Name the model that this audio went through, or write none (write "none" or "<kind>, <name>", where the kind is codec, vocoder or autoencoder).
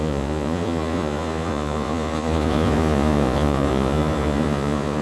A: vocoder, Vocos